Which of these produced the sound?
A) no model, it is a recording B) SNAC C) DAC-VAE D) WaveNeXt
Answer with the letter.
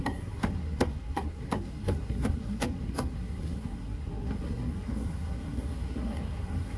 B